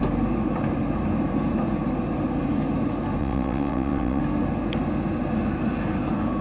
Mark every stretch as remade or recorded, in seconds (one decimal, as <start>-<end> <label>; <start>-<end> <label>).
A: 0.0-3.2 recorded; 3.2-4.2 remade; 4.2-6.4 recorded